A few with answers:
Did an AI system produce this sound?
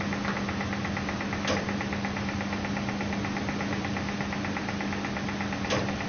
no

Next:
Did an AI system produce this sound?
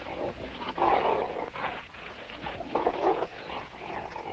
yes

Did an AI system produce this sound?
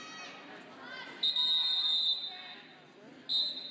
no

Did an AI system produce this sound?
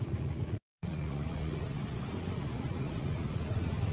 yes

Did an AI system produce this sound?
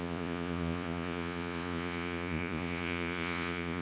yes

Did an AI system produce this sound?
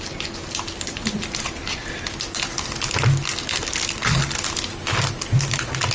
no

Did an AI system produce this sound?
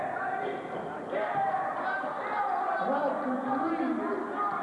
no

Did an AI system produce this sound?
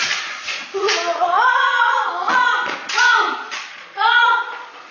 yes